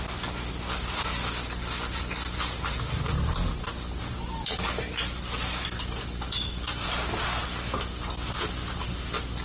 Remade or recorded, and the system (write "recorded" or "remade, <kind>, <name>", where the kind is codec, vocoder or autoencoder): recorded